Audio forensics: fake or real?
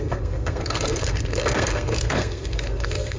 fake